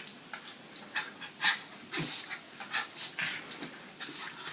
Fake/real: real